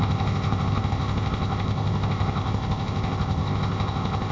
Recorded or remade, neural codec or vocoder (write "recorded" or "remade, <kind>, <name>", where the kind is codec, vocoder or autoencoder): remade, codec, ZipCodec